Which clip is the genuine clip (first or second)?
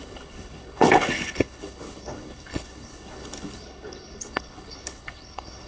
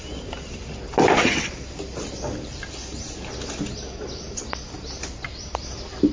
second